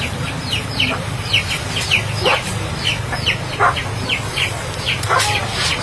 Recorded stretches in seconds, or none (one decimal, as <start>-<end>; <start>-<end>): 0.0-5.8